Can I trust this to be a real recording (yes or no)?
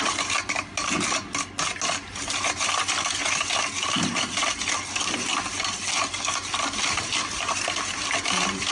yes